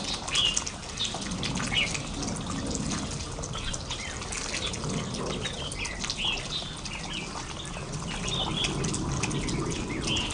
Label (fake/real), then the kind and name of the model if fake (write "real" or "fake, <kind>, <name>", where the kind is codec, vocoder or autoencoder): real